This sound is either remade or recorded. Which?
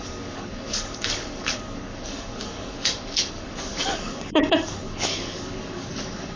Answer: remade